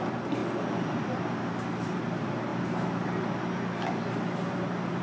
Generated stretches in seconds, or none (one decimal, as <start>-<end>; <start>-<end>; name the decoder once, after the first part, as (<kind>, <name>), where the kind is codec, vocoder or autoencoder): 0.0-0.4 (vocoder, BigVGAN v2); 1.2-2.5; 4.5-5.0